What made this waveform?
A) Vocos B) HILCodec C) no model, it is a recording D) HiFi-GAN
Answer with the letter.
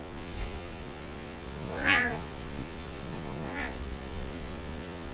A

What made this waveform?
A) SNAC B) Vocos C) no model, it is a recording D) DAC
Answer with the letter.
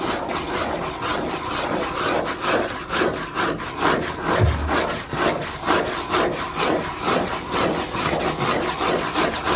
C